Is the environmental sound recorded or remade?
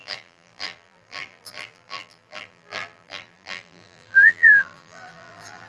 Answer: remade